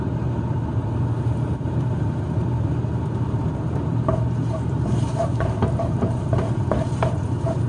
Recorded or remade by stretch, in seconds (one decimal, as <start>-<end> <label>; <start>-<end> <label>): 0.0-3.9 remade; 3.9-4.5 recorded; 4.5-7.7 remade